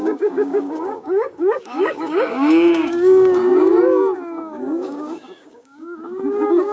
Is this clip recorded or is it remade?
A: remade